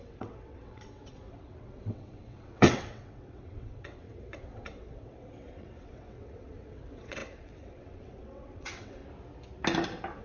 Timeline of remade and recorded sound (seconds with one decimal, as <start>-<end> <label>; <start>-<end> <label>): 0.0-9.0 remade; 9.0-10.2 recorded